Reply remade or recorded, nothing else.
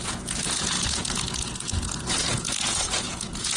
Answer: remade